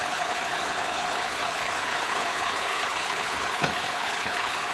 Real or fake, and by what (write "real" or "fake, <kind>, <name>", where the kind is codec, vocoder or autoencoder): fake, codec, HILCodec